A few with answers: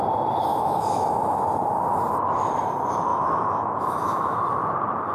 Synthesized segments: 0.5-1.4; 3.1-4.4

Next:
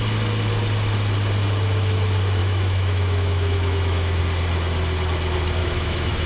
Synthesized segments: 2.4-4.2; 5.6-6.3

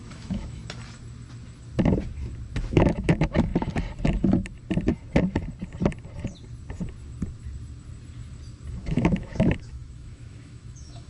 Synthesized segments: 0.0-0.6; 2.7-3.5; 8.7-11.1